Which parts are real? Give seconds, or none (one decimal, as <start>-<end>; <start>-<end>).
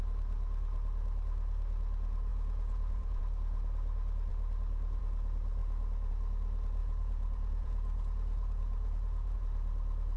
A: 0.0-2.3; 3.2-6.8; 9.4-10.2